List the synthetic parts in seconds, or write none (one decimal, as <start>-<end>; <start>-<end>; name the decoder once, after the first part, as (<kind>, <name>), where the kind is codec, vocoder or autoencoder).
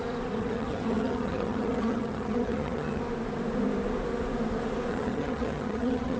0.4-3.0 (vocoder, HiFi-GAN); 4.9-6.2